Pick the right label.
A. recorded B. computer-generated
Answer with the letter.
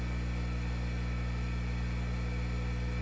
A